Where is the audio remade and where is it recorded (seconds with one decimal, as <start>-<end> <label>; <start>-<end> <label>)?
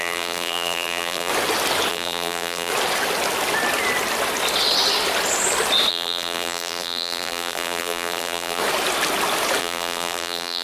0.0-1.3 remade; 1.3-1.9 recorded; 1.9-2.7 remade; 2.7-5.9 recorded; 5.9-8.6 remade; 8.6-9.6 recorded; 9.6-10.6 remade